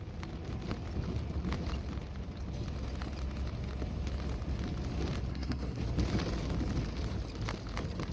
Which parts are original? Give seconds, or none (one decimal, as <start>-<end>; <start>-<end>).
0.0-5.3; 5.8-8.1